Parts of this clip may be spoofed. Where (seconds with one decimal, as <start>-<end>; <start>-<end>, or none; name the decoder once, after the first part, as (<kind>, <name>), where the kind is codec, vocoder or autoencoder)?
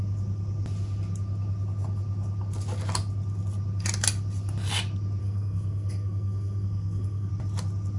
5.2-7.3 (codec, SNAC)